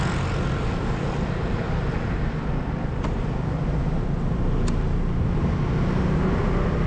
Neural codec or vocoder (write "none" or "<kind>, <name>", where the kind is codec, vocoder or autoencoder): none